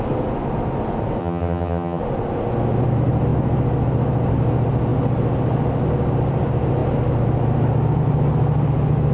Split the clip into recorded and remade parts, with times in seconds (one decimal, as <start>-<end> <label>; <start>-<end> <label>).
0.0-1.2 recorded; 1.2-2.0 remade; 2.0-9.1 recorded